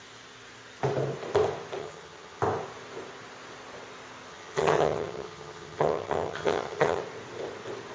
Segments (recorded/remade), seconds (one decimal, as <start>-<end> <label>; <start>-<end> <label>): 0.0-1.8 recorded; 1.8-2.4 remade; 2.4-4.3 recorded; 4.3-7.0 remade; 7.0-7.9 recorded